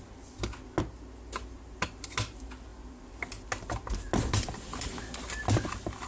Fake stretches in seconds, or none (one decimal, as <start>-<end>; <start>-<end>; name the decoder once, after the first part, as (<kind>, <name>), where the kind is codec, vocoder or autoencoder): none